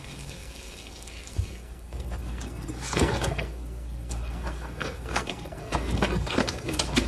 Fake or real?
fake